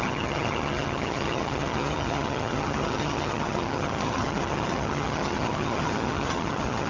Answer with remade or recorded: remade